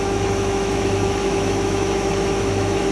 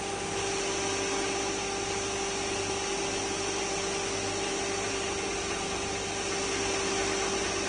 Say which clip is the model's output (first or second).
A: first